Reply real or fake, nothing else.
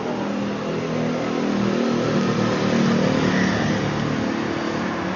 real